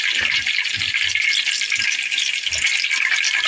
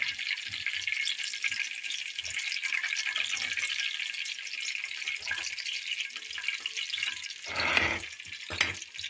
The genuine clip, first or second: second